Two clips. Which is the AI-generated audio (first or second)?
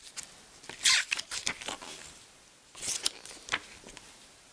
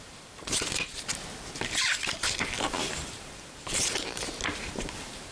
second